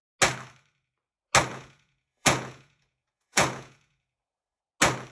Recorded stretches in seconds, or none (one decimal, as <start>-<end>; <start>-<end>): 0.0-1.5; 4.6-5.1